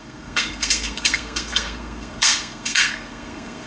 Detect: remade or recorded remade